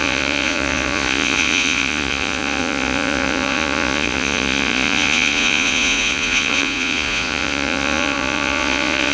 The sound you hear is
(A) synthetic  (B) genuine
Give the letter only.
A